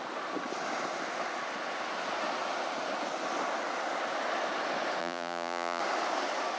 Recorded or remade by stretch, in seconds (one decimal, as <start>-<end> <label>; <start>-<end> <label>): 0.0-5.0 recorded; 5.0-5.8 remade; 5.8-6.6 recorded